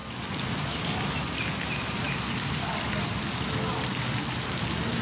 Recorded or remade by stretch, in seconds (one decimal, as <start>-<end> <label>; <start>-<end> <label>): 0.0-5.0 recorded